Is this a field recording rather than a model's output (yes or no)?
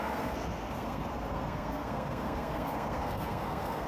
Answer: no